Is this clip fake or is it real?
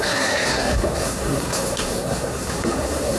fake